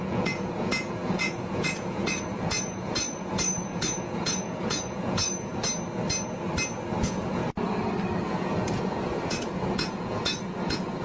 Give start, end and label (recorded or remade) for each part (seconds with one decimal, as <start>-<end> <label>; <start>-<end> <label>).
0.0-5.5 remade; 5.5-7.0 recorded; 7.0-7.4 remade; 7.4-8.3 recorded; 8.3-11.0 remade